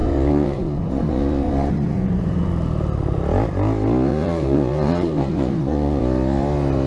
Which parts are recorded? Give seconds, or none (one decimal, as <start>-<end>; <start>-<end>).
2.5-4.1; 6.0-6.9